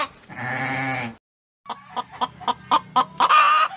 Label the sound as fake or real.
real